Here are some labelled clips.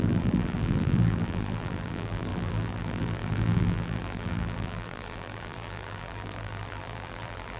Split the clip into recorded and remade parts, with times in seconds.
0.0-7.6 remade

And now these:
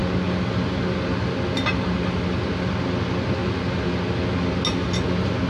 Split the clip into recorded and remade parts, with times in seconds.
0.0-5.5 recorded

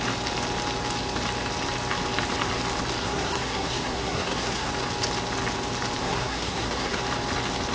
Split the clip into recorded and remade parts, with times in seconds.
0.0-3.0 recorded; 3.0-4.7 remade; 4.7-6.0 recorded; 6.0-7.0 remade; 7.0-7.7 recorded

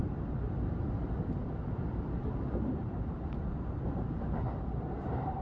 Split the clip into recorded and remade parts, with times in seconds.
0.0-0.8 recorded; 0.8-5.4 remade

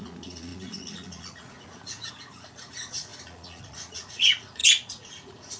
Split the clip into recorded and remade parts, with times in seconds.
0.0-5.6 remade

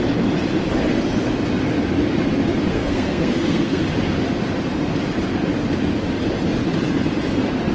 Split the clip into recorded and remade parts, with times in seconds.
0.0-2.7 recorded; 2.7-3.8 remade; 3.8-7.7 recorded

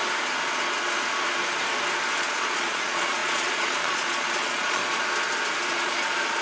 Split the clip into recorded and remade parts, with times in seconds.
0.0-2.2 recorded; 2.2-4.8 remade; 4.8-5.7 recorded; 5.7-6.4 remade